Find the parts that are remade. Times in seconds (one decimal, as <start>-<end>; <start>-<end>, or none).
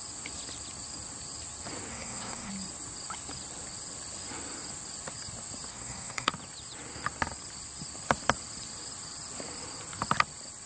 1.9-2.5; 5.7-6.3